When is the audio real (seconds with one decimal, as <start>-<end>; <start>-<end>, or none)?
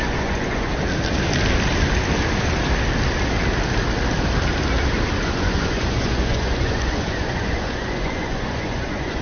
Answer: 0.7-5.2